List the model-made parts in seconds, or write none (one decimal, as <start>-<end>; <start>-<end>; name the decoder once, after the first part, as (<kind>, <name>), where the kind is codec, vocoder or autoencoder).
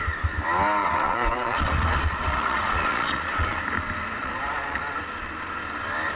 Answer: 0.8-3.6 (vocoder, Vocos); 4.2-4.8